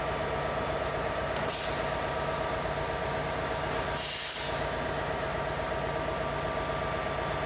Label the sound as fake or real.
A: real